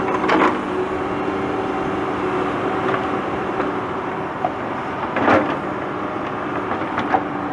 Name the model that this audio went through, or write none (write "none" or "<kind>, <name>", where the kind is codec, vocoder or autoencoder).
none